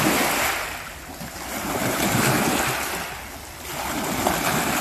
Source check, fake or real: real